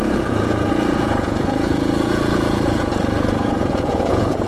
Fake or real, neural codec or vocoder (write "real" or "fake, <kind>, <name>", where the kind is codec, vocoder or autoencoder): fake, vocoder, Vocos